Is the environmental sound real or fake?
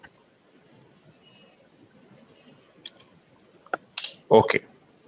real